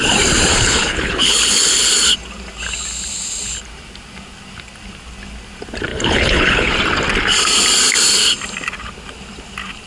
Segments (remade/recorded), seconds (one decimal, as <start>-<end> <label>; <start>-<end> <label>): 0.0-0.5 recorded; 0.5-1.9 remade; 1.9-5.9 recorded; 5.9-6.7 remade; 6.7-9.9 recorded